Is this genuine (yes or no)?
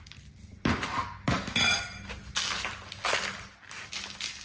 yes